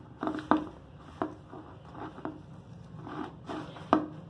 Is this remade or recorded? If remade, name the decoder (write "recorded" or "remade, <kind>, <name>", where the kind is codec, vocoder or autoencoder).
recorded